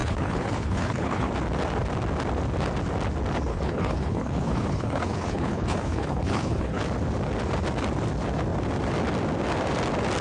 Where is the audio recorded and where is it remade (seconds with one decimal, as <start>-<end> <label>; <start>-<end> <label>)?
0.0-1.3 remade; 1.3-3.5 recorded; 3.5-6.8 remade; 6.8-10.2 recorded